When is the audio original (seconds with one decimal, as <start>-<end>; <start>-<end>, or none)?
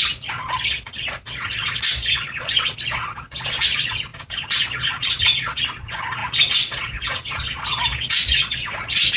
none